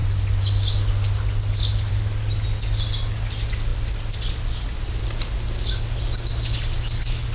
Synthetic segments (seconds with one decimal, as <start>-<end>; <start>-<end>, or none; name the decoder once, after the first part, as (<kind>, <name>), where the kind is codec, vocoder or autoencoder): none